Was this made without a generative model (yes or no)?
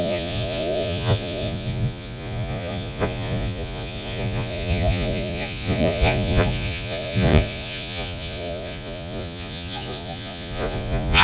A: no